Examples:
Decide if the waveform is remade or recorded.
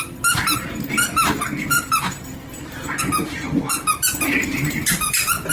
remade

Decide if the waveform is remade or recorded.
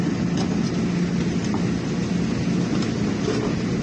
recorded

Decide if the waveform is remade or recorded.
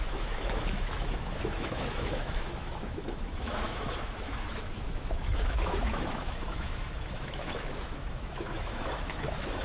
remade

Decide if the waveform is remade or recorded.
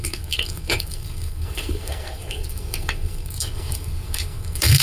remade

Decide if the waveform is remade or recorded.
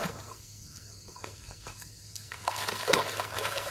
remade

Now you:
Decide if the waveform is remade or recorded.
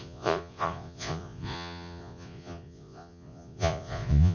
remade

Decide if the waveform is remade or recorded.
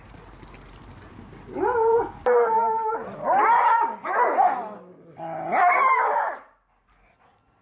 recorded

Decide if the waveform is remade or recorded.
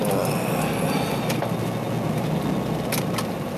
recorded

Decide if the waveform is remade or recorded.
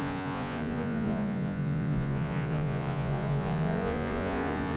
remade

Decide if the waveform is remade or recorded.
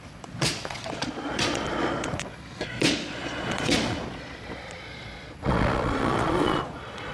remade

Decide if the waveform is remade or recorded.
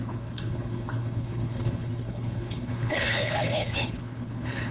remade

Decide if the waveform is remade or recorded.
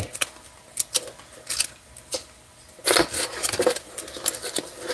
recorded